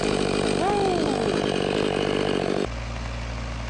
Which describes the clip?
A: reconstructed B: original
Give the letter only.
B